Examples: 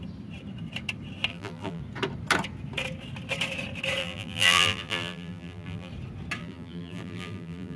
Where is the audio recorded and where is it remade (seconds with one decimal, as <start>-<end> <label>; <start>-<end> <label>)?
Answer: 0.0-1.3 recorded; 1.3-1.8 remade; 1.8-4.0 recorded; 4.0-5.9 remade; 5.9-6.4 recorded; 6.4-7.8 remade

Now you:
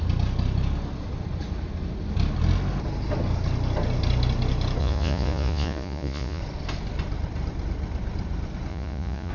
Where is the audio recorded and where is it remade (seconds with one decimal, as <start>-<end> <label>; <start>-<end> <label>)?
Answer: 0.0-4.8 recorded; 4.8-6.4 remade; 6.4-8.7 recorded; 8.7-9.3 remade

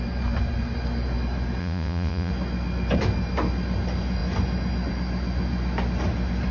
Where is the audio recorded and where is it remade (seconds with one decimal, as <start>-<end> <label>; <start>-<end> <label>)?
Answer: 0.0-1.6 recorded; 1.6-2.3 remade; 2.3-6.5 recorded

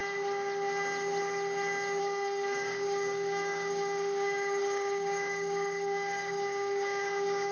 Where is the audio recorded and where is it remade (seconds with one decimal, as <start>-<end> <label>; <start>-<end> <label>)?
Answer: 0.0-2.0 recorded; 2.0-7.5 remade

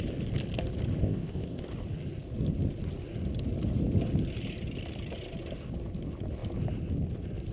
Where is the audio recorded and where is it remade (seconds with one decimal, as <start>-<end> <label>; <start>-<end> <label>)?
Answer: 0.0-1.0 recorded; 1.0-1.6 remade; 1.6-7.5 recorded

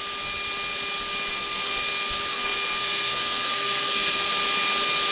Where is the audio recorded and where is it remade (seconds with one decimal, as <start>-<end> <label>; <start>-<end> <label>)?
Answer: 0.0-1.3 recorded; 1.3-1.8 remade; 1.8-2.3 recorded; 2.3-4.3 remade; 4.3-5.1 recorded